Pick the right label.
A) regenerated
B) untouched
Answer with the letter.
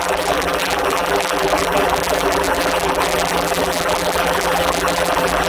A